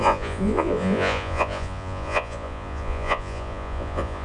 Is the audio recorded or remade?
remade